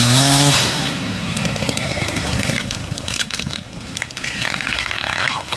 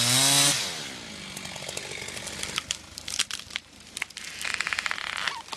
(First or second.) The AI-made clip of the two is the first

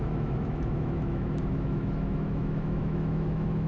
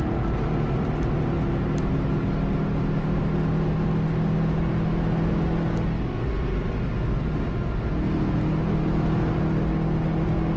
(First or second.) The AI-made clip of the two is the first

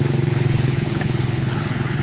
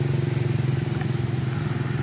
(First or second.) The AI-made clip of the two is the first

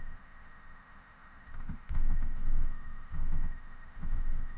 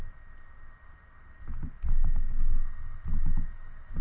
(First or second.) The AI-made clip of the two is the first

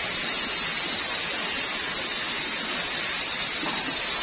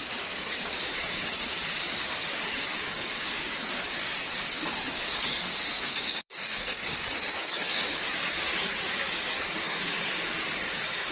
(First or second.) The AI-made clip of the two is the second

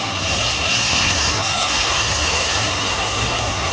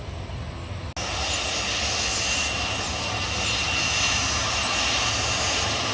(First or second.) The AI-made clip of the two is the first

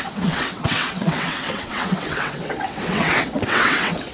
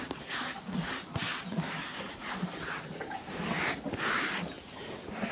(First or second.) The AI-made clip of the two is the first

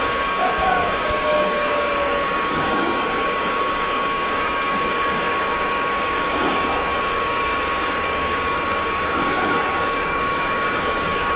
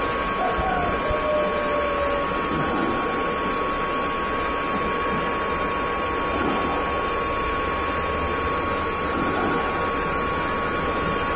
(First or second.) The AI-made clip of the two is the first